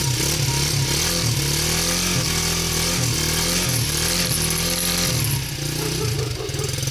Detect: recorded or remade recorded